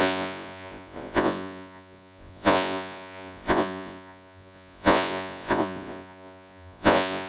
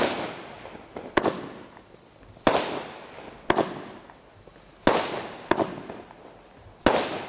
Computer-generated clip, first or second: first